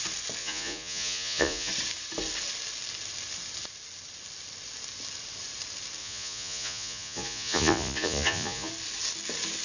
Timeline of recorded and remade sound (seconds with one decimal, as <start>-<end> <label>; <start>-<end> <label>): 0.0-0.4 recorded; 0.4-1.7 remade; 1.7-6.0 recorded; 6.0-8.7 remade; 8.7-9.6 recorded